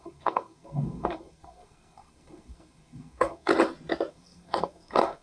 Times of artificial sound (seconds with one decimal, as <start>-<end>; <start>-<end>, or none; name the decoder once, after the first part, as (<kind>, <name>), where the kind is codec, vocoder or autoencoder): 0.0-3.5 (codec, SNAC); 4.1-5.2